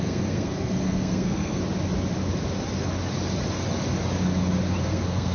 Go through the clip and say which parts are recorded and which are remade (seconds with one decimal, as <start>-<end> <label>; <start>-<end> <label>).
0.0-1.6 remade; 1.6-4.8 recorded; 4.8-5.3 remade